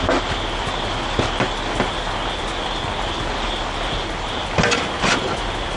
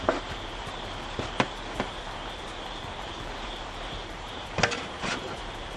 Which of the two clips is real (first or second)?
first